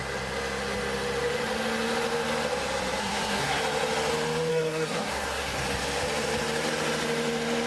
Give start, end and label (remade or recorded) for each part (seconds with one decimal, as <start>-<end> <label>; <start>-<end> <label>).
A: 0.0-3.0 recorded; 3.0-3.6 remade; 3.6-4.5 recorded; 4.5-5.6 remade; 5.6-7.7 recorded